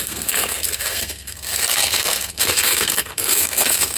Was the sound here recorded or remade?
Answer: remade